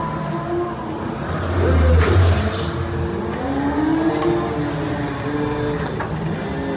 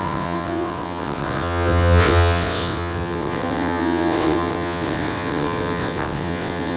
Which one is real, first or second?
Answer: first